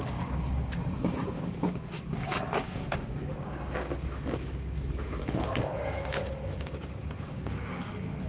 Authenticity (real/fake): fake